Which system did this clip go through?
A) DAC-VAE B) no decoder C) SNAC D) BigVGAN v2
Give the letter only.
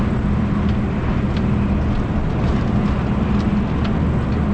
B